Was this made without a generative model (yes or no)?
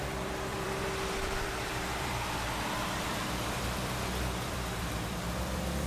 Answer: no